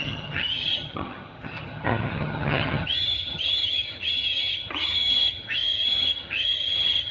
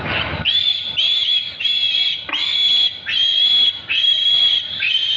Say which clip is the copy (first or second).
first